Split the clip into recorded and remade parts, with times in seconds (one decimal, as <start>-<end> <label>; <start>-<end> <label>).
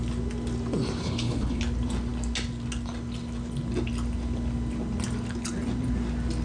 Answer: 0.0-1.0 recorded; 1.0-1.6 remade; 1.6-6.4 recorded